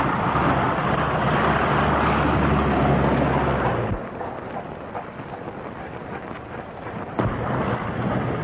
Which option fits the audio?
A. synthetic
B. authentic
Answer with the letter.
B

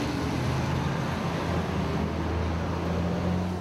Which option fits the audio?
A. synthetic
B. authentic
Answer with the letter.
B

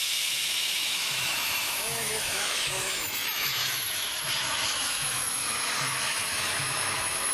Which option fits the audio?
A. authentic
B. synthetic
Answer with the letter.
B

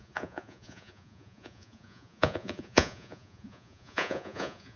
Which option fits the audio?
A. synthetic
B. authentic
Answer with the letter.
A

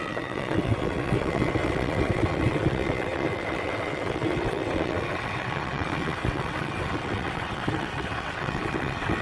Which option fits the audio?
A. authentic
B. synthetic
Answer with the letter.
B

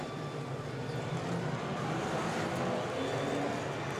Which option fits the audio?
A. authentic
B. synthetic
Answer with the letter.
A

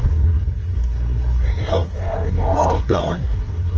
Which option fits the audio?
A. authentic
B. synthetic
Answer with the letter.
B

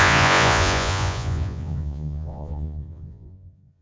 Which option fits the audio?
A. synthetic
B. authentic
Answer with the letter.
A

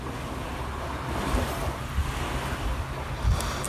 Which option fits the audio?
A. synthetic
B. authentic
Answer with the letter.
B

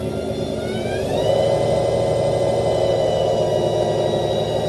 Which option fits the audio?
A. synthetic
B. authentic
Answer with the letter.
B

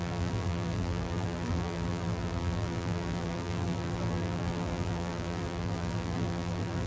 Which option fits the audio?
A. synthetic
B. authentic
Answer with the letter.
A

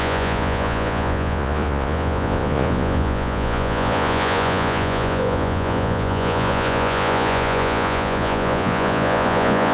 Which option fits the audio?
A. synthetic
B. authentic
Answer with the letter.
A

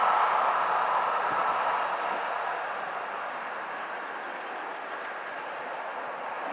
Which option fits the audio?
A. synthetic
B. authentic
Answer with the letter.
B